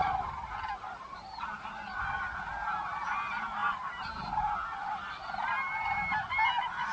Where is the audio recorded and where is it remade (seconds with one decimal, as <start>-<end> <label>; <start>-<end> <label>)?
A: 0.0-6.9 recorded